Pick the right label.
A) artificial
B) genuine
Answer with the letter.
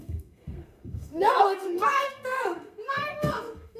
A